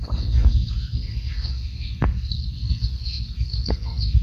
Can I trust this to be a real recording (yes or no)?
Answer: no